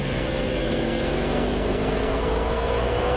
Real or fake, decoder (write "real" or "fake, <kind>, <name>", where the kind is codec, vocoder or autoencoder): fake, codec, SNAC